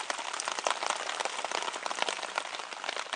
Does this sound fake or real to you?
real